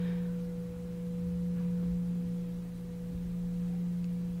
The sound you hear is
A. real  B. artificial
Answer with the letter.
A